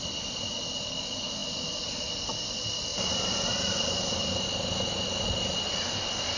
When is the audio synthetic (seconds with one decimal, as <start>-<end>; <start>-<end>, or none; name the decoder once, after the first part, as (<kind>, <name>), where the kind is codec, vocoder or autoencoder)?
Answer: none